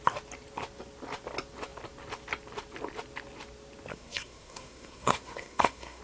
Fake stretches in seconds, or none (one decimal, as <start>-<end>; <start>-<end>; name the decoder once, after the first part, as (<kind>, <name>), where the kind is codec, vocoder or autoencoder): 3.9-6.0 (codec, SNAC)